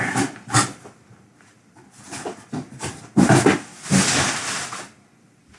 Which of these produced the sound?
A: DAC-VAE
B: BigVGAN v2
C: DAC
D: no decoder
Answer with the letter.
D